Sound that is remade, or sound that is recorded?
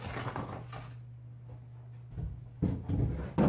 recorded